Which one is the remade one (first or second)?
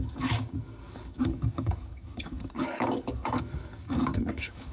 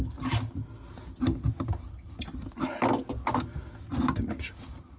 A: first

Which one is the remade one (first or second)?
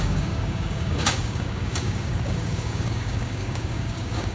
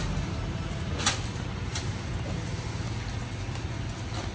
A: first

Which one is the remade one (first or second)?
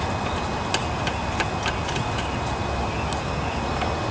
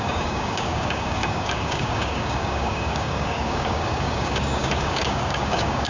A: second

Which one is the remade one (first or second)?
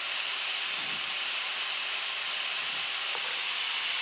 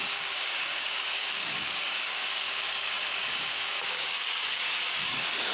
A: second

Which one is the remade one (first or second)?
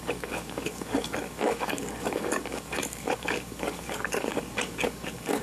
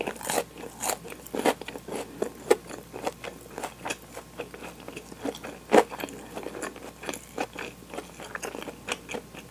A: first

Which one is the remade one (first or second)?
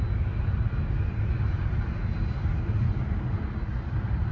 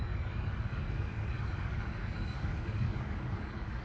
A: second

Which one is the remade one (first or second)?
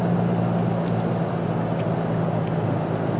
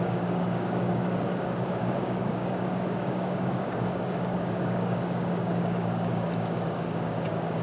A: second